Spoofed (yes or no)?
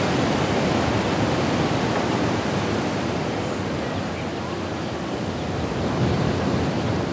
no